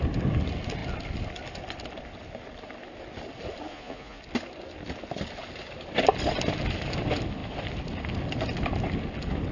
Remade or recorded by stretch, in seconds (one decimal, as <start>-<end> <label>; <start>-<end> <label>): 0.0-3.7 recorded; 3.7-4.2 remade; 4.2-9.5 recorded